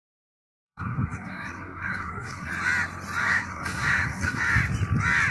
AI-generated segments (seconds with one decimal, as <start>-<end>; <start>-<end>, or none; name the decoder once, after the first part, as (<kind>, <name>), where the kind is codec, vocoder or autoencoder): 0.0-2.5 (codec, SNAC); 3.2-4.4